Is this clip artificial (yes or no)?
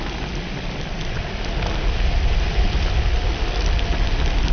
no